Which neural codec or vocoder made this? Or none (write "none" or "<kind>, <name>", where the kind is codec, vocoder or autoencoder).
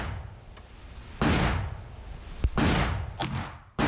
none